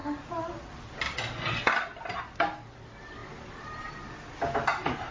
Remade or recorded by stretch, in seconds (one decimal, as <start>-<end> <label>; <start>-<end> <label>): 0.0-5.1 recorded